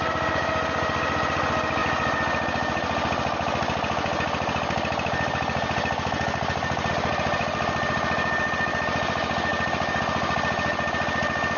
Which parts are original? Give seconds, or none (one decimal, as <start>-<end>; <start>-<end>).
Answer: 0.0-11.6